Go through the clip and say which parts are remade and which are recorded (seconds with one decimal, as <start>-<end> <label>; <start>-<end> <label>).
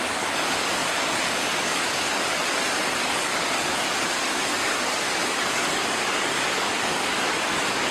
0.0-7.9 remade